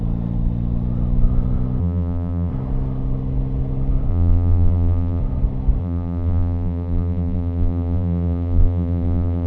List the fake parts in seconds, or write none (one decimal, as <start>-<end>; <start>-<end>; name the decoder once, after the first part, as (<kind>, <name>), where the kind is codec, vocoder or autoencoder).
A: 1.8-2.5 (vocoder, BigVGAN v2); 4.1-5.2; 5.8-9.5